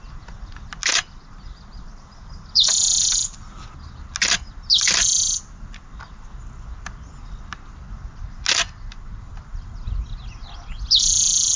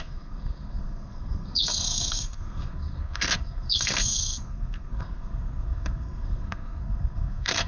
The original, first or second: first